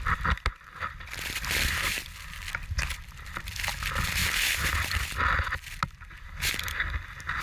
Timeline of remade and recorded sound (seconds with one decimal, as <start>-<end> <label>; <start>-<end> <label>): 0.0-7.4 recorded